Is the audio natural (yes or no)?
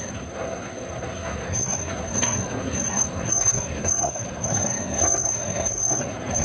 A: no